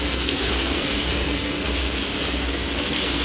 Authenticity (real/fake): fake